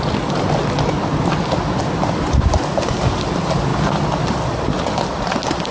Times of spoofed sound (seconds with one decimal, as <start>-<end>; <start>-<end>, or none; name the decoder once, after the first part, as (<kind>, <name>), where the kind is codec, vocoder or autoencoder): none